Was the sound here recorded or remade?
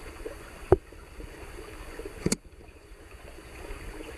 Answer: remade